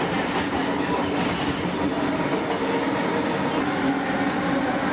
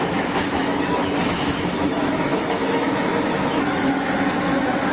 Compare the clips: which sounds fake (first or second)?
second